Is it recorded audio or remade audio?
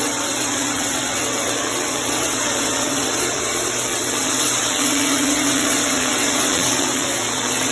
remade